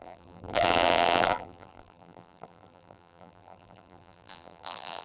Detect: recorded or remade remade